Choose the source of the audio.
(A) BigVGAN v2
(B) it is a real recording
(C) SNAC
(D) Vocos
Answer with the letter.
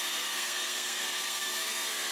C